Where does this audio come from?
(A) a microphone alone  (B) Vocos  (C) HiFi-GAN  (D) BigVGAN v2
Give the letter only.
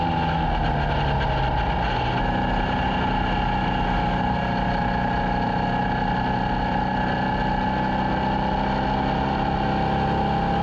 A